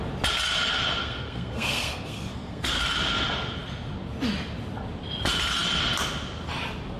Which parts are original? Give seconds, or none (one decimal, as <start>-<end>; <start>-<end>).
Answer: 0.0-1.0; 2.8-7.0